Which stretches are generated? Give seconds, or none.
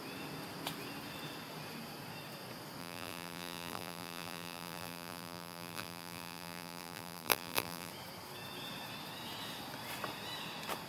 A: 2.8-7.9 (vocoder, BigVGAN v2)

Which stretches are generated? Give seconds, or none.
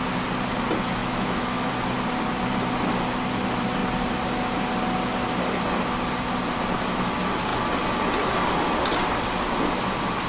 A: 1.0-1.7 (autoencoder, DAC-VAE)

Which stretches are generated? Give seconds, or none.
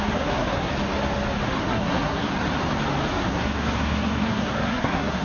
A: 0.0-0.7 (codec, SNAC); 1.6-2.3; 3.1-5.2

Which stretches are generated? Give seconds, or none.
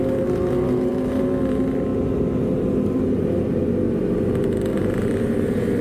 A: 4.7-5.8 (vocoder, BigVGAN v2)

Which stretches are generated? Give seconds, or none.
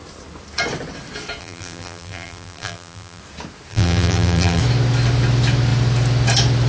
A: 1.4-3.2 (vocoder, BigVGAN v2); 3.7-4.6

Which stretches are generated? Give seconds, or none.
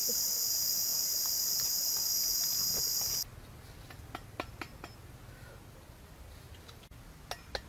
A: none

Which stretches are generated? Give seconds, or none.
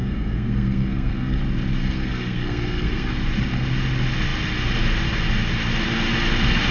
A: 0.0-1.4 (codec, SNAC); 1.8-3.1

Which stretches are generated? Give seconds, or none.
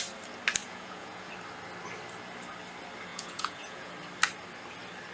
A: 0.6-1.3 (vocoder, Vocos); 3.1-3.9